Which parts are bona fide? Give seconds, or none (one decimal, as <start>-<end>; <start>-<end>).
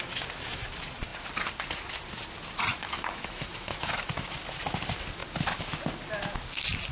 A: 0.0-2.7; 4.4-6.9